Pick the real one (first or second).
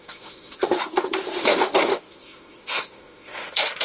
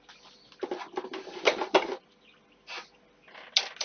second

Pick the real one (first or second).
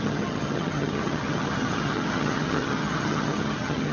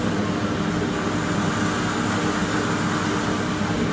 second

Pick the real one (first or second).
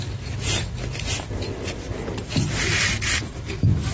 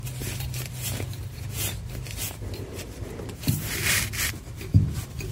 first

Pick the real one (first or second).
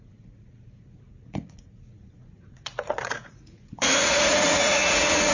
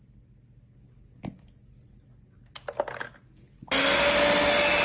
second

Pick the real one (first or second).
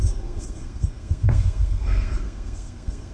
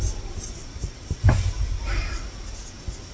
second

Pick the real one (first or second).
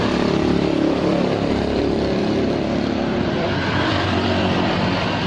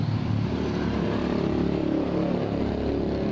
second